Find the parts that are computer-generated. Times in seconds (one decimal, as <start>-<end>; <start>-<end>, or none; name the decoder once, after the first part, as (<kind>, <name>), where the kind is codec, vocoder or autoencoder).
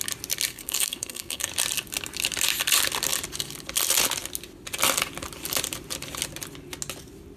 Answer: 0.5-1.5 (codec, SNAC)